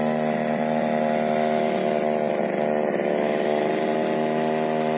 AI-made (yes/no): no